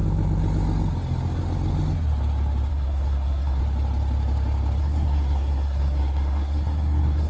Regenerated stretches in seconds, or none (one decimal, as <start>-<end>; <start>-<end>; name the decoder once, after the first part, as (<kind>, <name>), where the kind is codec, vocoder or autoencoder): 2.7-3.6 (codec, SNAC); 4.8-7.3